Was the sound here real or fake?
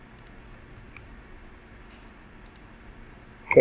real